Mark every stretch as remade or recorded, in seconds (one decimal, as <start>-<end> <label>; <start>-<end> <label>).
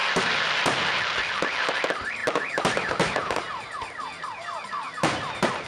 0.0-5.7 recorded